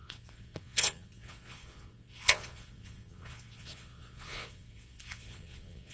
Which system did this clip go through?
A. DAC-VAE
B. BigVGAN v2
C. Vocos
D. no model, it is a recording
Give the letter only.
C